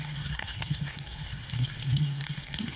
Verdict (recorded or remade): remade